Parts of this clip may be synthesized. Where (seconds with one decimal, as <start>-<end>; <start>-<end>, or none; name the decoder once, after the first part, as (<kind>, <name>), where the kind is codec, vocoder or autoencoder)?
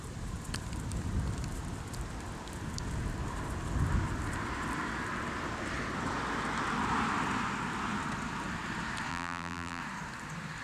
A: 9.1-9.8 (vocoder, BigVGAN v2)